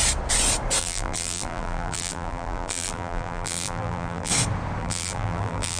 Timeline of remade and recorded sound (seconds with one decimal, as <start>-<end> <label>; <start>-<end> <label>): 0.0-0.8 recorded; 0.8-4.3 remade; 4.3-4.8 recorded; 4.8-5.8 remade